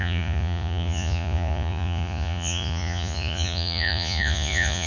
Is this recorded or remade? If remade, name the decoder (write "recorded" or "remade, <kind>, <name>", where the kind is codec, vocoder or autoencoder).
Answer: remade, vocoder, Vocos